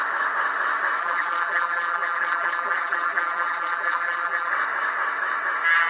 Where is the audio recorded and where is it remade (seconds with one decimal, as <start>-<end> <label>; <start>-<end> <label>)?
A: 0.0-1.0 recorded; 1.0-4.5 remade; 4.5-5.9 recorded